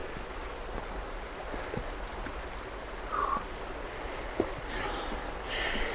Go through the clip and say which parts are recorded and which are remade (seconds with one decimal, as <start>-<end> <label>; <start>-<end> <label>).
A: 0.0-5.9 recorded